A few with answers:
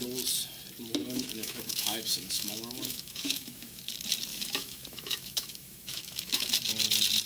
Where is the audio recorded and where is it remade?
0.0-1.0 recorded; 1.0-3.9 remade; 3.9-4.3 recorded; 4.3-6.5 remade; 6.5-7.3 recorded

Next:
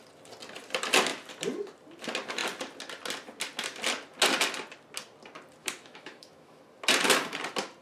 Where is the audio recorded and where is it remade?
0.0-5.6 recorded; 5.6-6.6 remade; 6.6-7.8 recorded

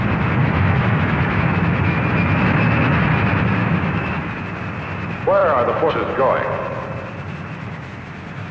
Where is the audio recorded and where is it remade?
0.0-0.4 recorded; 0.4-2.0 remade; 2.0-3.6 recorded; 3.6-4.4 remade; 4.4-8.5 recorded

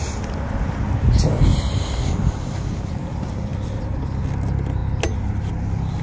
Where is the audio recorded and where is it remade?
0.0-6.0 recorded

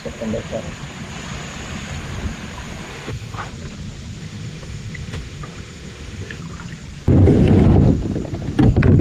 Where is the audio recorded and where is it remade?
0.0-2.9 recorded; 2.9-3.5 remade; 3.5-4.2 recorded; 4.2-6.4 remade; 6.4-9.0 recorded

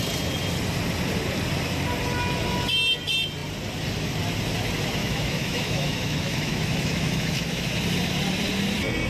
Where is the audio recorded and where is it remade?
0.0-5.0 recorded; 5.0-7.7 remade; 7.7-9.1 recorded

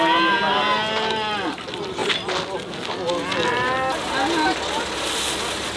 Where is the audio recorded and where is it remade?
0.0-5.8 recorded

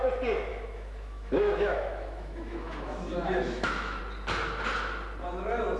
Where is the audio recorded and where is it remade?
0.0-0.5 recorded; 0.5-4.0 remade; 4.0-5.8 recorded